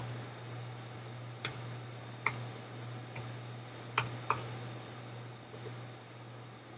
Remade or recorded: recorded